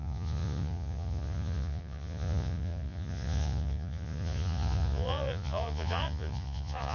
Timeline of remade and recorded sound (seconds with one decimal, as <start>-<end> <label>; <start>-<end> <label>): 0.0-6.9 remade